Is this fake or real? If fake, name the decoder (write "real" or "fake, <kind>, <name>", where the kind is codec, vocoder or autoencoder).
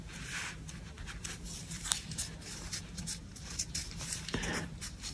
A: fake, vocoder, BigVGAN v2